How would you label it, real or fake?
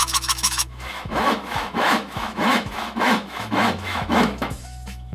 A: fake